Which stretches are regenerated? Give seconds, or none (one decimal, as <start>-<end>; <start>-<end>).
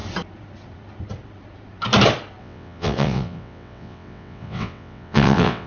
2.4-5.7